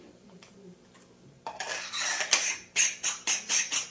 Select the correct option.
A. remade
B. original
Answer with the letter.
B